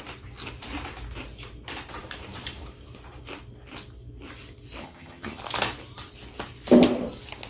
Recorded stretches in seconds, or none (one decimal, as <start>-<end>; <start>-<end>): 0.0-4.8; 5.4-7.5